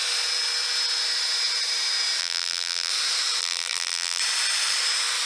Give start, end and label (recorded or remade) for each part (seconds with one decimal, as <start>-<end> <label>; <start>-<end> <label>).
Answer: 0.0-2.2 recorded; 2.2-2.9 remade; 2.9-3.4 recorded; 3.4-4.2 remade; 4.2-5.3 recorded